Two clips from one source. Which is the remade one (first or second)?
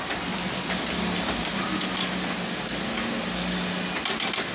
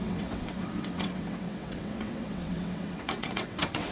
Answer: second